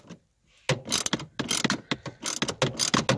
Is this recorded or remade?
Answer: recorded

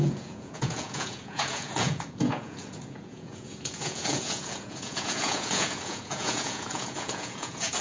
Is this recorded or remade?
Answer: remade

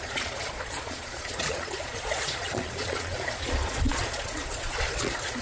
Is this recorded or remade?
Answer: remade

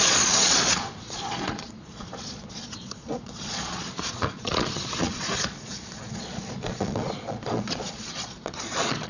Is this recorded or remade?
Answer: remade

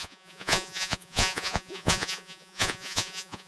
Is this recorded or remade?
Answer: remade